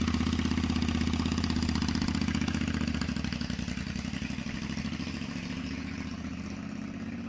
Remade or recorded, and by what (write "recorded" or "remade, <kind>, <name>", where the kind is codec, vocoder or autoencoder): recorded